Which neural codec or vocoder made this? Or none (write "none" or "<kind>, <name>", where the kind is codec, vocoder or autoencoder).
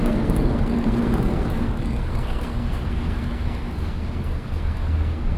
codec, SNAC